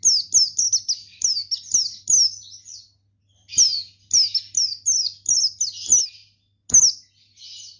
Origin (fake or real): real